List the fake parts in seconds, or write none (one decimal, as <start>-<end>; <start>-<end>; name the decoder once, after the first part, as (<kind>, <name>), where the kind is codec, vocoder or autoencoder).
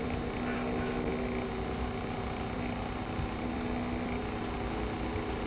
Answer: none